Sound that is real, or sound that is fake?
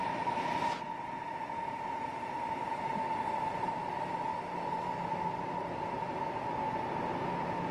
real